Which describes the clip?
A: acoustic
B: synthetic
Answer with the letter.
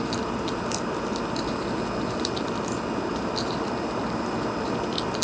A